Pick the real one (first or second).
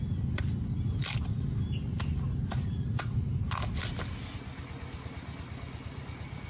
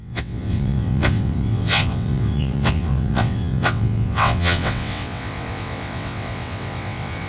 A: first